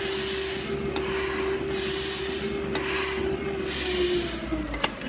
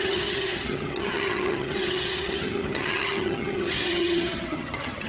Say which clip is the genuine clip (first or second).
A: first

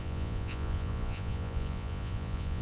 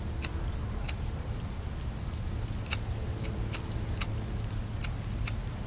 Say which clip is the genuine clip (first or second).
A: second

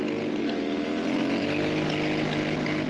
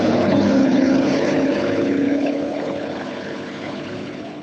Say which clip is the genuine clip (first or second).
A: first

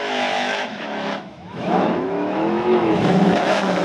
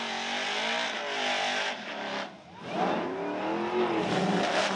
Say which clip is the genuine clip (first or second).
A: second